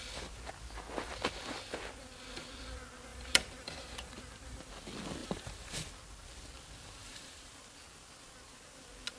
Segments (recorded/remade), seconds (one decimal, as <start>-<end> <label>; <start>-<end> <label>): 0.0-3.1 recorded; 3.1-4.7 remade; 4.7-5.2 recorded; 5.2-5.9 remade; 5.9-7.0 recorded; 7.0-7.5 remade; 7.5-9.2 recorded